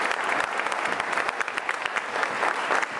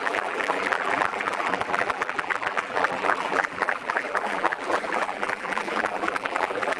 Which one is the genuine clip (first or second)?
first